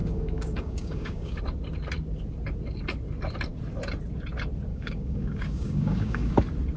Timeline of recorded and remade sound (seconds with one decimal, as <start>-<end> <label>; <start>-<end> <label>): 0.0-1.4 remade; 1.4-4.7 recorded; 4.7-6.3 remade; 6.3-6.8 recorded

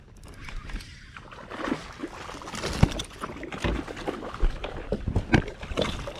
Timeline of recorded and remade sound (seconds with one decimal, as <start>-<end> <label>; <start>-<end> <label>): 0.0-6.2 recorded